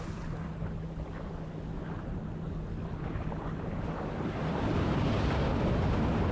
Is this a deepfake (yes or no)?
no